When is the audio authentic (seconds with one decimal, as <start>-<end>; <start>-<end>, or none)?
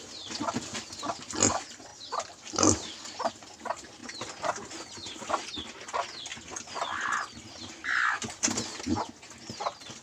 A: 0.0-10.0